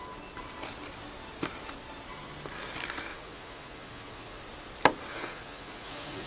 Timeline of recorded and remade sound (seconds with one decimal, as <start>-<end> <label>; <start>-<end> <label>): 0.0-3.1 recorded; 3.1-4.4 remade; 4.4-5.1 recorded; 5.1-6.3 remade